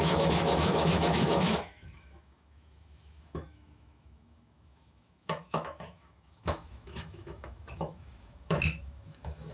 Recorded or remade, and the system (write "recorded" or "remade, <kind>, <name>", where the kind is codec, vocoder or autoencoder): remade, autoencoder, DAC-VAE